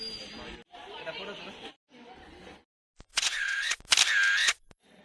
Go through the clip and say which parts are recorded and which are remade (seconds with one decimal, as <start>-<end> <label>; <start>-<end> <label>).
0.0-3.1 recorded; 3.1-3.8 remade; 3.8-4.4 recorded; 4.4-5.0 remade